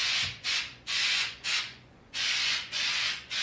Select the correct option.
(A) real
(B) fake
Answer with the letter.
B